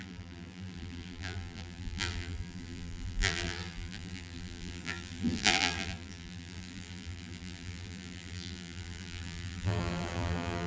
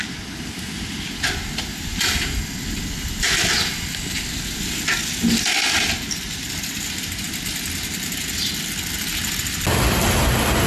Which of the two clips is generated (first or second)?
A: first